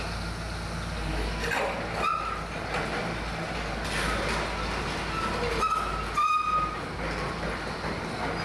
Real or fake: real